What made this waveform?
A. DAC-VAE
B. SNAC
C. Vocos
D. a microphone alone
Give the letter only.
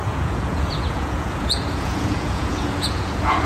C